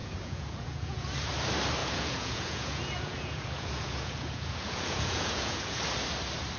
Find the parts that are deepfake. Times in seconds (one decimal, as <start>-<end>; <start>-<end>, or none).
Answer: 0.0-1.1; 1.8-5.8

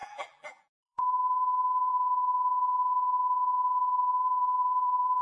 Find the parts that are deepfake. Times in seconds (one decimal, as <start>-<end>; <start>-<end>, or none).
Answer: 0.0-1.9; 4.0-5.2

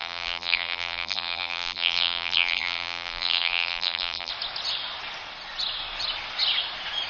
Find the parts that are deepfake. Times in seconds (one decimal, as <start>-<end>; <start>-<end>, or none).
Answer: 0.0-4.3

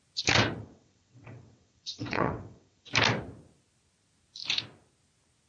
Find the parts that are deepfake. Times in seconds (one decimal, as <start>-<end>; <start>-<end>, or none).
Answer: 0.6-2.9

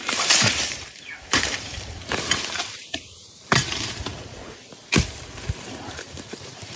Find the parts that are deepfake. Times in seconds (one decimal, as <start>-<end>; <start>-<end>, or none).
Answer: 0.0-4.1; 5.4-6.8

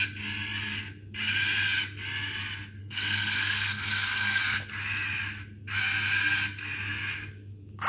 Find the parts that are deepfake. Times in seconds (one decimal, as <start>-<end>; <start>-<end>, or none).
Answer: 2.8-4.4

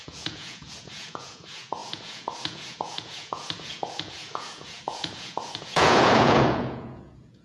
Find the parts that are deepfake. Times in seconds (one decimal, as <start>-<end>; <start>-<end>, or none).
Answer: 0.0-7.4